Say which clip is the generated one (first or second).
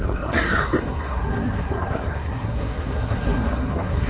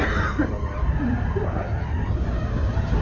first